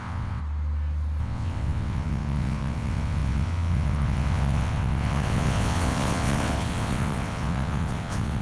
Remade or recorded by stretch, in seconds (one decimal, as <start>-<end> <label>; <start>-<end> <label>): 0.0-0.4 remade; 0.4-1.2 recorded; 1.2-8.4 remade

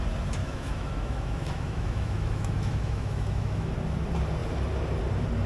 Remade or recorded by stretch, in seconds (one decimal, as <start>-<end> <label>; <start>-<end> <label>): 0.0-0.4 recorded; 0.4-3.7 remade; 3.7-5.5 recorded

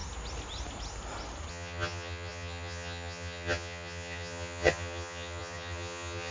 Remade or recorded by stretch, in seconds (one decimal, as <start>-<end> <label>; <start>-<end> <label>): 0.0-1.5 recorded; 1.5-6.3 remade

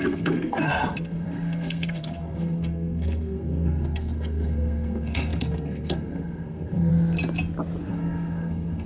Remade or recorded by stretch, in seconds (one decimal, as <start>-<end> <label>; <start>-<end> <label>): 0.0-6.9 remade; 6.9-7.9 recorded; 7.9-8.9 remade

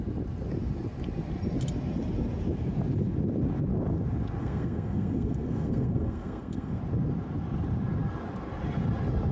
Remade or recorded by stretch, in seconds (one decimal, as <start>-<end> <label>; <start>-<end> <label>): 0.0-4.4 recorded; 4.4-6.8 remade; 6.8-9.3 recorded

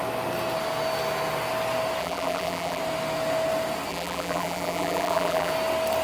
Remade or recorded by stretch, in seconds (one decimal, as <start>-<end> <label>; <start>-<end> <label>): 0.0-2.0 recorded; 2.0-2.8 remade; 2.8-3.9 recorded; 3.9-5.5 remade; 5.5-6.0 recorded

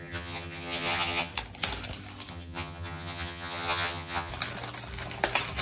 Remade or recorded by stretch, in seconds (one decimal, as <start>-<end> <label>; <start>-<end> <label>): 0.0-1.3 remade; 1.3-2.3 recorded; 2.3-4.3 remade; 4.3-5.6 recorded

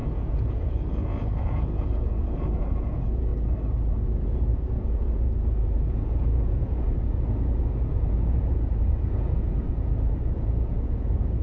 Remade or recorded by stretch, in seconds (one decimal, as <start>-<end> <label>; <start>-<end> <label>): 0.0-3.3 remade; 3.3-3.9 recorded; 3.9-11.4 remade